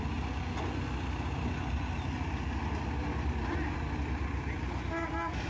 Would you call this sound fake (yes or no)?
no